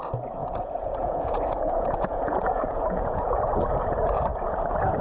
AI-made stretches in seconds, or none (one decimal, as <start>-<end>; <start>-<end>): 0.4-3.4